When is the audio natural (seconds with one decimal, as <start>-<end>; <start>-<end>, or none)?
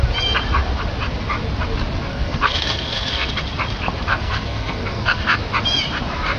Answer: 0.0-2.1; 3.3-4.1; 5.4-6.4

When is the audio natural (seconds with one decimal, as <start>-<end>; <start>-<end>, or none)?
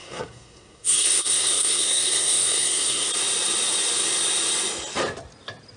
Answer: 3.1-5.8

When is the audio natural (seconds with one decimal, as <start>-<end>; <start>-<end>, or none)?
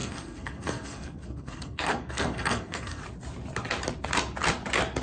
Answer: 3.0-5.0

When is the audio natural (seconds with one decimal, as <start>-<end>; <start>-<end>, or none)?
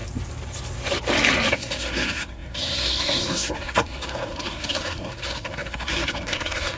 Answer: 0.0-1.5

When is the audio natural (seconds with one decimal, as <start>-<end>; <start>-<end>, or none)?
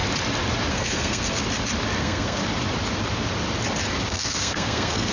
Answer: 0.0-0.7; 1.4-2.0; 2.4-4.1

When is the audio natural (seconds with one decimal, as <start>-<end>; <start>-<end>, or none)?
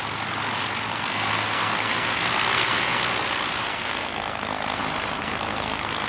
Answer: 0.0-0.9; 3.0-3.6; 4.8-5.2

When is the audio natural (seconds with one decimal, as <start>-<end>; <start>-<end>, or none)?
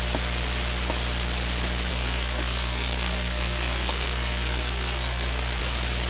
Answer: 0.0-1.9; 5.6-6.1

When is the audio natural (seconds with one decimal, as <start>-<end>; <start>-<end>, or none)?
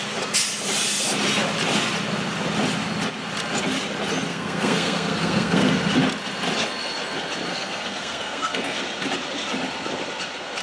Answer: 0.0-4.3; 5.7-7.5; 8.8-10.6